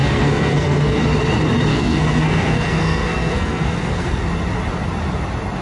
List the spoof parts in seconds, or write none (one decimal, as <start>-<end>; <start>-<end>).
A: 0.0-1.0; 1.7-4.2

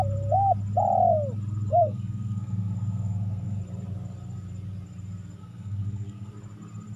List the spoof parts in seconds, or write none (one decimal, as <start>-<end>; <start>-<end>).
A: 1.7-3.6; 5.4-6.3

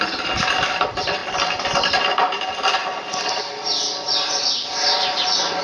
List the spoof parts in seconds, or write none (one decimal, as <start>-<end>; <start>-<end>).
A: 0.0-1.2; 2.1-2.8; 4.4-5.6